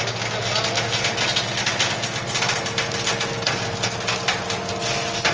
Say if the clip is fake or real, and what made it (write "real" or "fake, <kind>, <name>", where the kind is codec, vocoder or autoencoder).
real